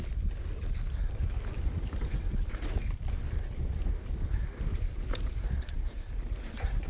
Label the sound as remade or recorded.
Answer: recorded